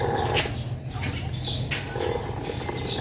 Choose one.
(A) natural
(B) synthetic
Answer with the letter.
A